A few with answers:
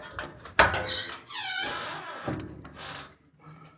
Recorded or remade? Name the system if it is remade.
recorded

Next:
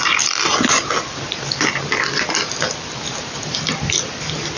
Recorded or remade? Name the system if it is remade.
recorded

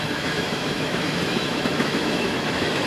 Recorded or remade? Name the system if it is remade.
remade, autoencoder, DAC-VAE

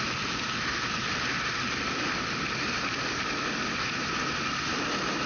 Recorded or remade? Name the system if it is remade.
recorded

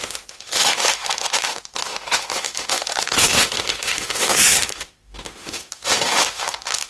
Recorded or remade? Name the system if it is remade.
remade, autoencoder, DAC-VAE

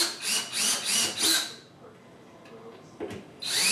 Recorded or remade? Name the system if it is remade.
recorded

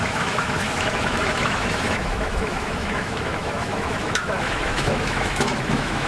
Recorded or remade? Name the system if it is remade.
remade, autoencoder, DAC-VAE